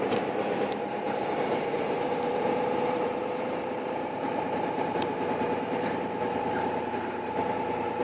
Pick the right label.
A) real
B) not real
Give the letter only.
B